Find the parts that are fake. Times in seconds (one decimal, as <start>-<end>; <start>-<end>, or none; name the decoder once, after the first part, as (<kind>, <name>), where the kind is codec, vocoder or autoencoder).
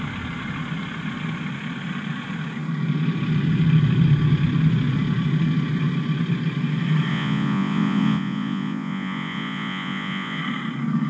7.1-10.4 (vocoder, Vocos)